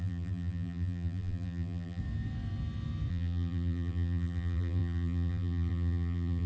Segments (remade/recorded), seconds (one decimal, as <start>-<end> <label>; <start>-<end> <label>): 0.0-2.0 remade; 2.0-3.1 recorded; 3.1-6.5 remade